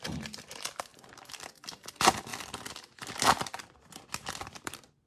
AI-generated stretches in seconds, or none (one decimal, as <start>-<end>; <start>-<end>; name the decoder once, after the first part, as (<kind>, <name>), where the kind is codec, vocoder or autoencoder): 0.0-2.3 (vocoder, BigVGAN v2); 4.1-5.1